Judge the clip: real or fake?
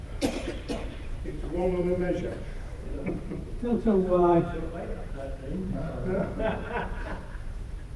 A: fake